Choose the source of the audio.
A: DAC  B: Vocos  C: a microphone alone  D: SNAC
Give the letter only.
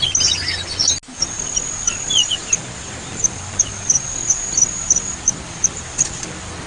C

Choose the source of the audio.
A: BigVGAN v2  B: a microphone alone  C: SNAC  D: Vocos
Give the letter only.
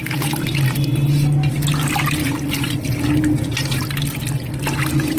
B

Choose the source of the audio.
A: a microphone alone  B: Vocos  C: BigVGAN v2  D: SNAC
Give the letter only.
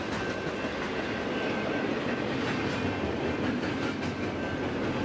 A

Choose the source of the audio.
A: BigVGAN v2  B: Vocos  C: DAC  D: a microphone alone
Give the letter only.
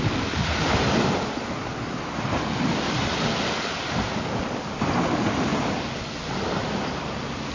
D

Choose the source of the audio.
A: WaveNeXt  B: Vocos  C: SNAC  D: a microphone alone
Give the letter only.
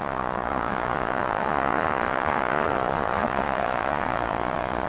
B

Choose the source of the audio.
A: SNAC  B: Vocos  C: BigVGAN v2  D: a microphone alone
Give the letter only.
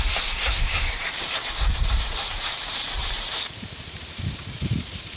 C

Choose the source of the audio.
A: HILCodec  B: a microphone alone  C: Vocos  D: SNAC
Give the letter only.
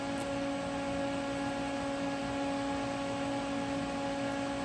B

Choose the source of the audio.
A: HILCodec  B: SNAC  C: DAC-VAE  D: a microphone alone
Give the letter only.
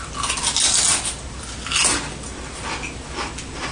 D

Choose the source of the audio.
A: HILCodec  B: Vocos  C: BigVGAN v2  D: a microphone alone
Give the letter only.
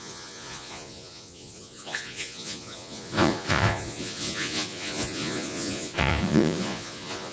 B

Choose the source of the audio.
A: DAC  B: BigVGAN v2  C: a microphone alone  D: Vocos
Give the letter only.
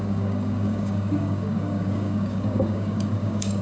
A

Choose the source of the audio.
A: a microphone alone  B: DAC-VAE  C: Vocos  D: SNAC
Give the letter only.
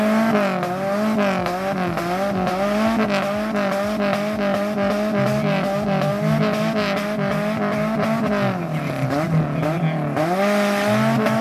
A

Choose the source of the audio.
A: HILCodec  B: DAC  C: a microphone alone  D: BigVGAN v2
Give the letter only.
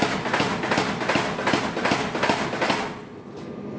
C